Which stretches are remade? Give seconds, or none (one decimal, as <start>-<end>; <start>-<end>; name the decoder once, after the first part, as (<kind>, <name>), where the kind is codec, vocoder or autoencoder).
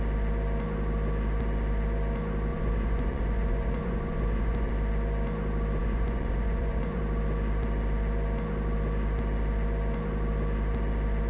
2.5-4.7 (vocoder, Vocos); 5.8-7.0